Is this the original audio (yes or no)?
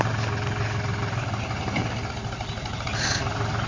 yes